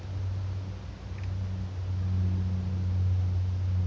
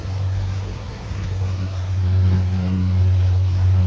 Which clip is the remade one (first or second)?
second